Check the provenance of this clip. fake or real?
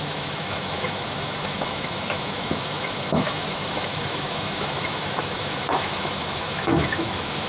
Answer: fake